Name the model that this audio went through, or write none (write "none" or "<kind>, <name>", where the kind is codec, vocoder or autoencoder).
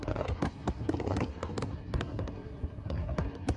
codec, SNAC